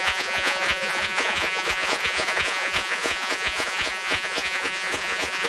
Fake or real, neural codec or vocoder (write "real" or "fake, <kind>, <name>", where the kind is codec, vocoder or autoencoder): fake, vocoder, Vocos